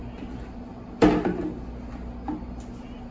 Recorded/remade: recorded